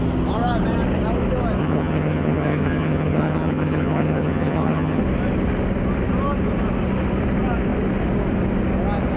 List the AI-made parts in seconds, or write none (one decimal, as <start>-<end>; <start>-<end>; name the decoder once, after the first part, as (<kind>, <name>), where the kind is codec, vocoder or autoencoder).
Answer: 1.6-5.0 (vocoder, HiFi-GAN)

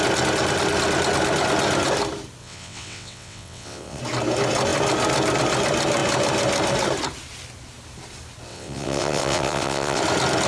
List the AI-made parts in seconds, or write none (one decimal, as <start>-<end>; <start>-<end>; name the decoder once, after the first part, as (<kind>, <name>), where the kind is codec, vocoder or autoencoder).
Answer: 2.4-4.0 (vocoder, WaveNeXt); 8.5-10.0

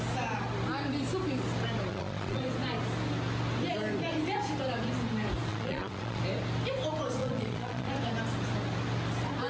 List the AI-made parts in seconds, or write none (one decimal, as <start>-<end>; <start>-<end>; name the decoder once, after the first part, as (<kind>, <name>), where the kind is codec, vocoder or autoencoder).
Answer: 1.9-2.4 (vocoder, Vocos); 5.5-6.2; 7.2-7.9

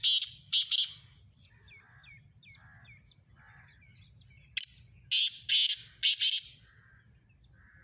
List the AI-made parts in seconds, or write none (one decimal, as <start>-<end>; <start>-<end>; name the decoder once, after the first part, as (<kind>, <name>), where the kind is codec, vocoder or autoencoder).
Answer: none

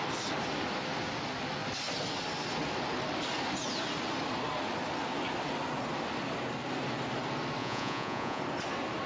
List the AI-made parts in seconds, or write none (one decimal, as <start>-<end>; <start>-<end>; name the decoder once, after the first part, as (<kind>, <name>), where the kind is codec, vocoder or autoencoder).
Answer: 7.6-8.4 (vocoder, Vocos)